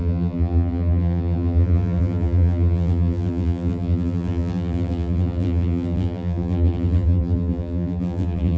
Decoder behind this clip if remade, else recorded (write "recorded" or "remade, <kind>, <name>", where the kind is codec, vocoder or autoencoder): remade, vocoder, BigVGAN v2